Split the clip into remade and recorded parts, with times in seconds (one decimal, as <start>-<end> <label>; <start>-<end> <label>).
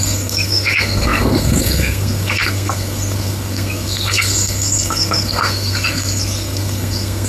0.0-7.3 remade